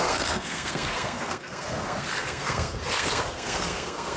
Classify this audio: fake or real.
fake